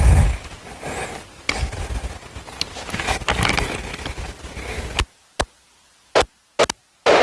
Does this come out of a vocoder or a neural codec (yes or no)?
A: no